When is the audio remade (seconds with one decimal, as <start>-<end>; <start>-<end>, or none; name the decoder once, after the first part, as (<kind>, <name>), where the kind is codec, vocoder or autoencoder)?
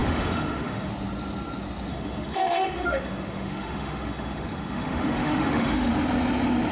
0.0-0.9 (autoencoder, DAC-VAE); 1.9-5.9